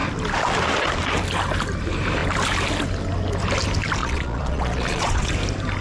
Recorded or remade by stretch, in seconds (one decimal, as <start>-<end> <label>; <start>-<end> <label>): 0.0-4.0 recorded; 4.0-5.3 remade; 5.3-5.8 recorded